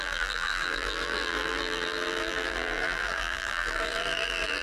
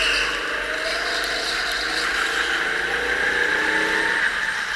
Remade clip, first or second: first